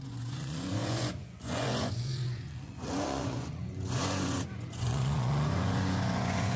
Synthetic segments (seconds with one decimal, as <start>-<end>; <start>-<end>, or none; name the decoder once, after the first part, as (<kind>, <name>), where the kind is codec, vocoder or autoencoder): 0.0-6.6 (vocoder, Vocos)